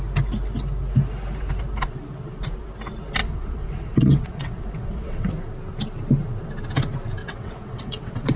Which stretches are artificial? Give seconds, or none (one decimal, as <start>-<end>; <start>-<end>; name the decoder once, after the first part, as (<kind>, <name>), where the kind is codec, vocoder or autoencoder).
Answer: 3.2-5.3 (vocoder, WaveNeXt); 7.2-8.4